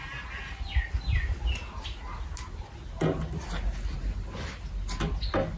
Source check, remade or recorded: recorded